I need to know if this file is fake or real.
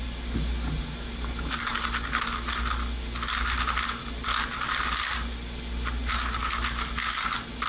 real